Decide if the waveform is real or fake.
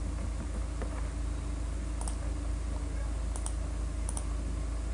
real